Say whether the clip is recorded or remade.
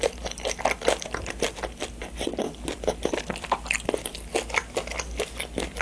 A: recorded